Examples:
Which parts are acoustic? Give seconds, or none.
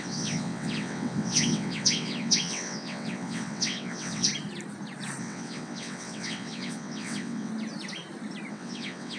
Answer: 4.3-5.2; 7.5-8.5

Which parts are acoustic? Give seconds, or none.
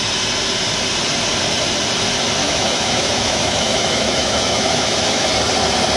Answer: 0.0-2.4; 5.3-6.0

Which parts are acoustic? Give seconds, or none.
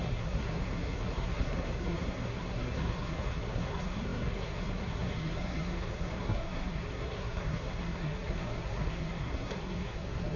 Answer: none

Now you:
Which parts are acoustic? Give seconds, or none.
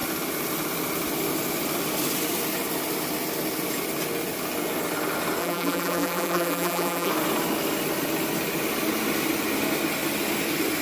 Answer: 0.0-5.4; 7.1-10.8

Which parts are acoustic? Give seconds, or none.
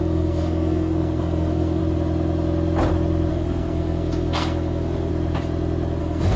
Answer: 1.8-3.3; 5.1-6.0